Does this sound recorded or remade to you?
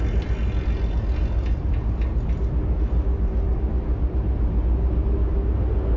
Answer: recorded